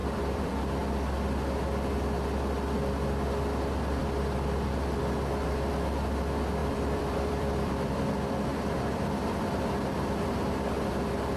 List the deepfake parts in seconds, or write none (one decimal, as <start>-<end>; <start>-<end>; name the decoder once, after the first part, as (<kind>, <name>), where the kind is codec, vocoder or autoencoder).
0.0-0.5 (vocoder, BigVGAN v2); 6.6-8.1; 8.5-10.3